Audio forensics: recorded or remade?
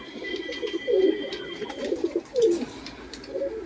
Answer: recorded